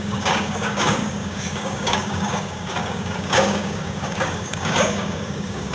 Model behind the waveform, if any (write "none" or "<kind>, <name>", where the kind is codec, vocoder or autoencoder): codec, DAC